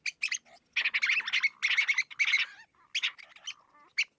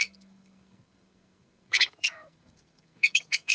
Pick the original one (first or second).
first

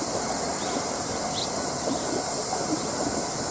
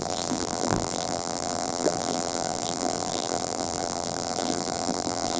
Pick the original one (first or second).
first